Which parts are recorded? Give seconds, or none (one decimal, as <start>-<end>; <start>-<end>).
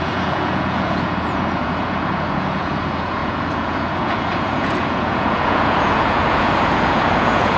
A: none